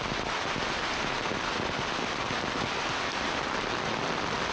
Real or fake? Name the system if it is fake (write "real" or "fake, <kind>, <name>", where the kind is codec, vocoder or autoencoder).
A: real